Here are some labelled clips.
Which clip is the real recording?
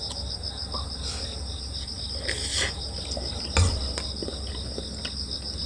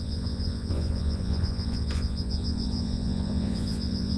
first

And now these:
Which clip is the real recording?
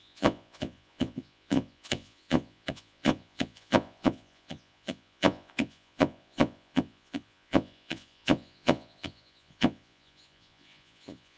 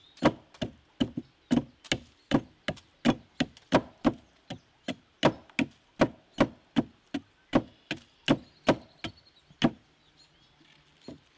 second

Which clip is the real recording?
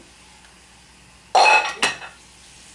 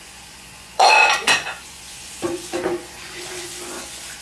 first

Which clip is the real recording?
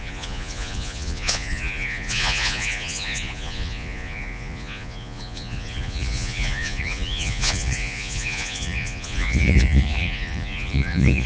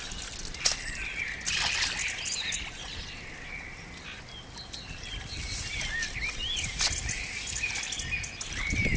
second